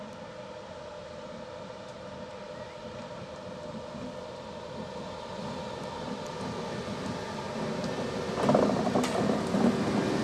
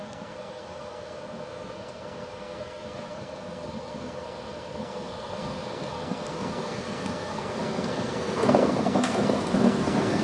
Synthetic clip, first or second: second